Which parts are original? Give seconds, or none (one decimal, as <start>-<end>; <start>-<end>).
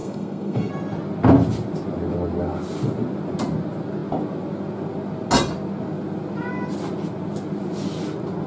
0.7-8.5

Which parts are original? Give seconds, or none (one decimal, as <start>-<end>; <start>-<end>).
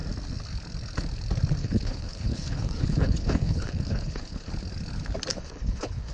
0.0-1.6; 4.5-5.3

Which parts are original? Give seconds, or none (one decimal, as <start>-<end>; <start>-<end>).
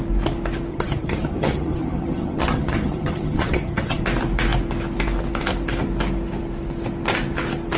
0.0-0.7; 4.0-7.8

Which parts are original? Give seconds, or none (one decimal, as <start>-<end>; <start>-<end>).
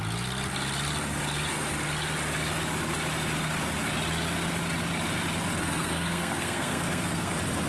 0.0-5.6; 7.3-7.7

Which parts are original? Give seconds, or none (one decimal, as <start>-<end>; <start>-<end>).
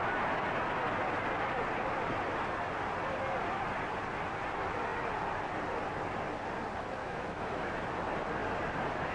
0.0-7.0; 7.9-9.1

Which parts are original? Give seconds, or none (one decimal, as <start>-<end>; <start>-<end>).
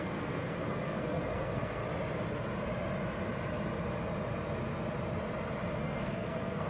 1.8-5.8